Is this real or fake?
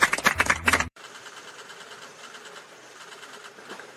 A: fake